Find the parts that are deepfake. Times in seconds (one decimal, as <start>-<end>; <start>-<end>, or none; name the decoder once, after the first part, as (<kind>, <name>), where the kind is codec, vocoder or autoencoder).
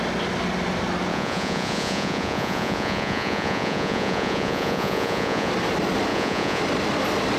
1.1-5.5 (vocoder, Vocos); 6.1-6.6